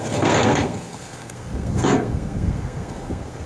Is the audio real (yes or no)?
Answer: no